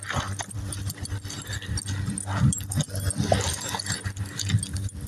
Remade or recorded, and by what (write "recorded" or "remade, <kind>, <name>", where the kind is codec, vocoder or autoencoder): recorded